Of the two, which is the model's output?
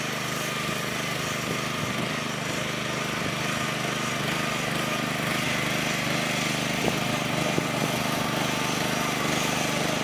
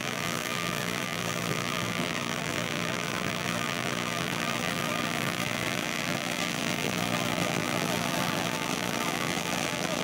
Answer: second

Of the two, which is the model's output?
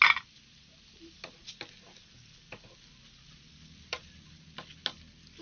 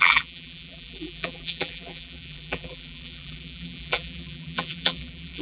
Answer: second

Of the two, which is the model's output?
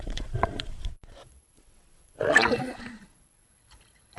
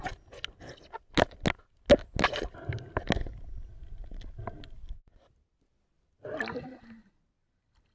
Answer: first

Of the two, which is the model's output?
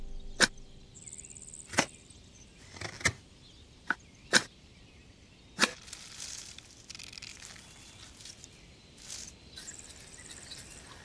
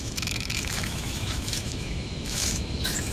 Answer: second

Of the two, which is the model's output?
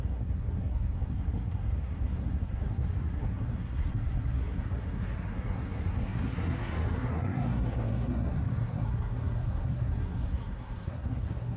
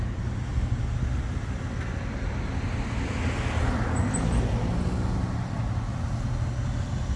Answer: first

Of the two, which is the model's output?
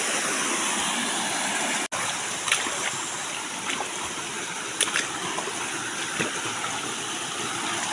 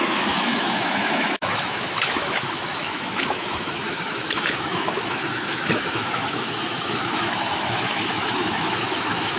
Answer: second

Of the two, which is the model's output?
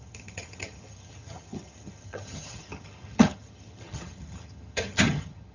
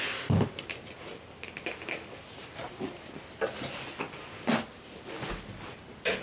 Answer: first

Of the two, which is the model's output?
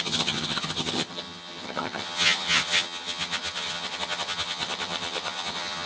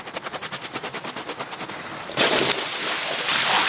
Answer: first